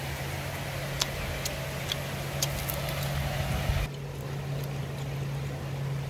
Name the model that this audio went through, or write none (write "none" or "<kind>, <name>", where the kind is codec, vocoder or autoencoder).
none